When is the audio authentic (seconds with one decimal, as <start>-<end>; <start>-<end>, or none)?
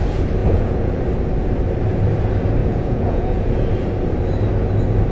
0.0-0.4; 1.0-2.6; 3.5-5.1